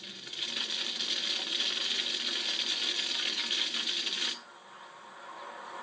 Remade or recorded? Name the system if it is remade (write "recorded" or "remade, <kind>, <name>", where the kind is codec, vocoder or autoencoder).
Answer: recorded